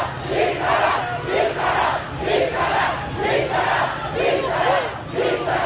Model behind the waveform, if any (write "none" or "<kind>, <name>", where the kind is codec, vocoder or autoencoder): none